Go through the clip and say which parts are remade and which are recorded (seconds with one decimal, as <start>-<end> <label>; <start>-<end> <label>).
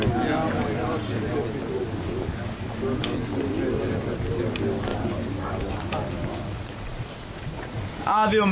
0.0-6.3 recorded; 6.3-7.8 remade; 7.8-8.5 recorded